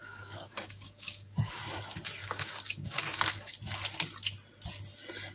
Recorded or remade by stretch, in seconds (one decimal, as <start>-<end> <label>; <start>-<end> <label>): 0.0-1.6 remade; 1.6-2.2 recorded; 2.2-3.5 remade; 3.5-5.3 recorded